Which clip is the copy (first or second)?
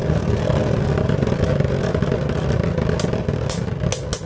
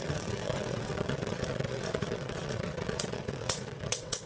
second